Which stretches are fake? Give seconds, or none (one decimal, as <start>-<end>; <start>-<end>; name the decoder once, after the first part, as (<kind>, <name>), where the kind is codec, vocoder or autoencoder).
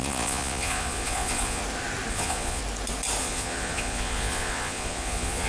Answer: 0.0-1.6 (vocoder, Vocos); 2.1-2.6; 3.2-5.5